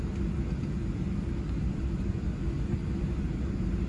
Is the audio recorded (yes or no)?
yes